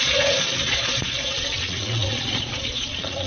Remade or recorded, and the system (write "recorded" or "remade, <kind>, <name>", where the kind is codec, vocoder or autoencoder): remade, vocoder, Vocos